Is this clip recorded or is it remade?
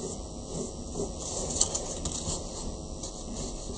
recorded